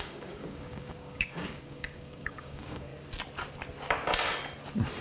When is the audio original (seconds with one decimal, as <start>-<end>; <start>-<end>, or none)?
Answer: 2.9-5.0